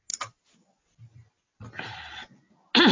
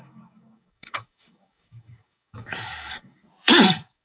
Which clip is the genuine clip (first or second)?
first